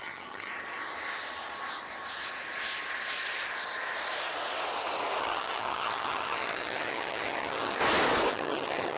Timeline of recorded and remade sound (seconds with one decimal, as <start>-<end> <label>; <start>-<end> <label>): 0.0-0.5 remade; 0.5-5.2 recorded; 5.2-7.8 remade; 7.8-8.3 recorded; 8.3-9.0 remade